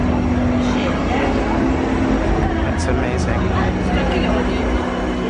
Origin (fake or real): real